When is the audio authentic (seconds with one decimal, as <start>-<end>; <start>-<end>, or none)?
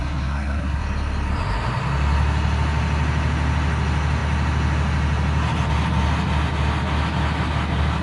0.8-8.0